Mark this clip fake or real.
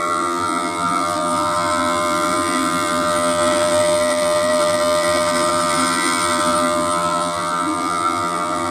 fake